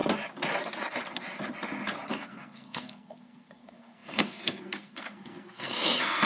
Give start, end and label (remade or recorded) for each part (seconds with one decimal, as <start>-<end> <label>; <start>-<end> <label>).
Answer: 0.0-2.1 recorded; 2.1-6.3 remade